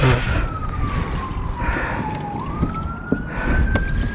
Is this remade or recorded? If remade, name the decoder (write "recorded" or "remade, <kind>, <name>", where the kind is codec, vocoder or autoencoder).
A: recorded